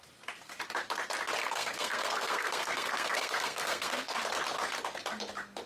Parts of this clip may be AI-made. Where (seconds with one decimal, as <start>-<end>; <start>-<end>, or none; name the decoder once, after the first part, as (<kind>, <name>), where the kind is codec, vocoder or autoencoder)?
1.4-4.2 (codec, SNAC)